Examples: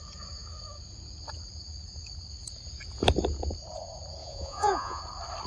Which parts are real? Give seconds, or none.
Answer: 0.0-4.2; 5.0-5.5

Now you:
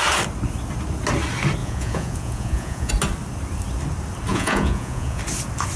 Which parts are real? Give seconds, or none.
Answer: 0.0-1.6; 2.9-4.3; 5.2-5.8